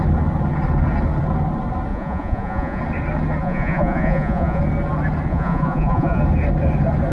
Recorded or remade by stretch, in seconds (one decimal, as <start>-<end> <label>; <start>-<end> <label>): 0.0-1.9 recorded; 1.9-2.8 remade; 2.8-3.4 recorded; 3.4-4.6 remade; 4.6-5.3 recorded; 5.3-6.2 remade; 6.2-7.1 recorded